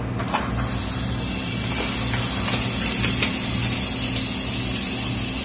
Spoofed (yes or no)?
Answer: no